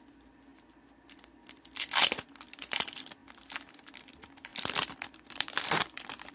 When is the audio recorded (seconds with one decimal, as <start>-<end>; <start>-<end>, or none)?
0.5-2.6; 3.2-3.9

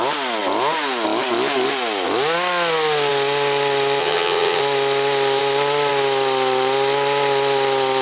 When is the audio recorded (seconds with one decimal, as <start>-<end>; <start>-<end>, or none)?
0.0-4.0; 4.6-8.0

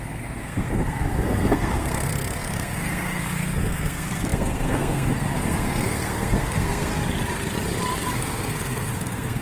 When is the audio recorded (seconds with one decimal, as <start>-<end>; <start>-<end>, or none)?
6.9-8.1

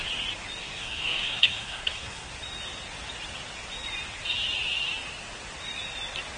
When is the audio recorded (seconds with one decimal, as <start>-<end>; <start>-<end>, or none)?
0.0-0.6; 2.3-6.4

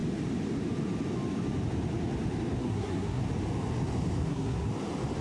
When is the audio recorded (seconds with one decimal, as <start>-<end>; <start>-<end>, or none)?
0.0-2.6; 3.2-4.2; 4.7-5.2

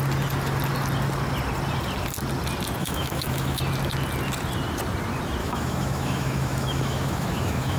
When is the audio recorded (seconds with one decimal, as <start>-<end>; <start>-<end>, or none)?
0.0-2.8; 3.6-5.4